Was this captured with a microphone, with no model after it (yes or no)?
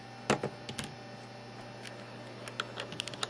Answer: yes